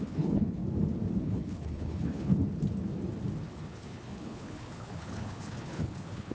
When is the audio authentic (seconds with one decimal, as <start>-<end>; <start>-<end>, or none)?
0.6-1.2; 2.3-3.5